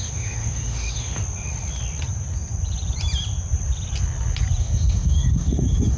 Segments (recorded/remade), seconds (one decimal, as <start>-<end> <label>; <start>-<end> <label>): 0.0-1.2 remade; 1.2-4.6 recorded; 4.6-6.0 remade